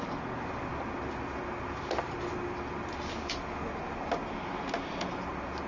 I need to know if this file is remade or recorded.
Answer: recorded